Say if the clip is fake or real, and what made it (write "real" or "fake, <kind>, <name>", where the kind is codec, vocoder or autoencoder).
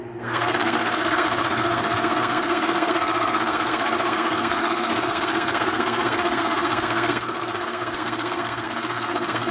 fake, codec, SNAC